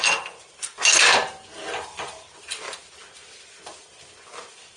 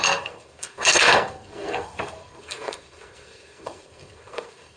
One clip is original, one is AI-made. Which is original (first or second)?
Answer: first